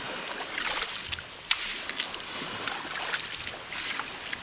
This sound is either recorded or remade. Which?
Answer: recorded